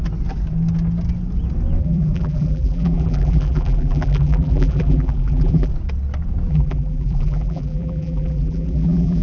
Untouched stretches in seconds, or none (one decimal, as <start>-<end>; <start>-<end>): 0.0-1.8; 5.7-6.5